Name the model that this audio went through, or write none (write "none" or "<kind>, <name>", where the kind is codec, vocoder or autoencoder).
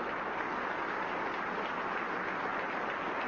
none